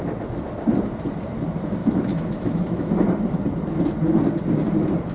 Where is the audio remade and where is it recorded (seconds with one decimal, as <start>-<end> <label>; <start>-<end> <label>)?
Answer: 0.0-1.8 recorded; 1.8-2.9 remade; 2.9-5.1 recorded